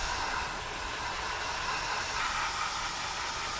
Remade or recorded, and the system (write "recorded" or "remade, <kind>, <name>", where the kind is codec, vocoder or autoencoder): recorded